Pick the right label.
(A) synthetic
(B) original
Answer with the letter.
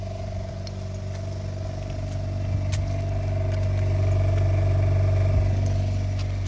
B